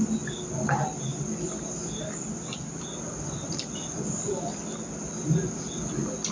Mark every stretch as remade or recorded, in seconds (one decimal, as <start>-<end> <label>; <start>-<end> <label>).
0.0-6.3 recorded